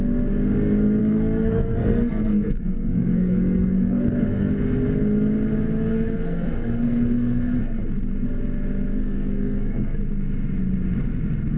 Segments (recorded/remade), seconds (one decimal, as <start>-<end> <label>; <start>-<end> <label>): 0.0-1.0 recorded; 1.0-4.5 remade; 4.5-5.9 recorded; 5.9-7.8 remade; 7.8-9.0 recorded; 9.0-10.0 remade; 10.0-11.6 recorded